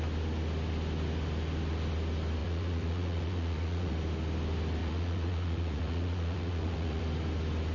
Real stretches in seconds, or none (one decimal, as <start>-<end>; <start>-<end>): 0.0-2.4; 3.9-4.8; 7.0-7.7